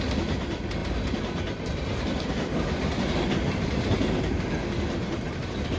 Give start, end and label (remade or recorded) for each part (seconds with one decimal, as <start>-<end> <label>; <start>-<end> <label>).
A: 0.0-5.8 recorded